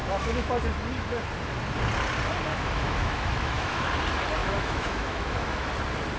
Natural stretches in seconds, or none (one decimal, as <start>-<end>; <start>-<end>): 0.6-2.5; 3.9-4.4; 5.7-6.2